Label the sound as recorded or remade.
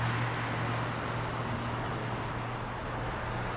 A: recorded